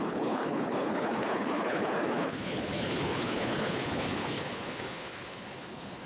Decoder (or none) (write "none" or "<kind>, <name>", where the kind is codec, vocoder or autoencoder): codec, HILCodec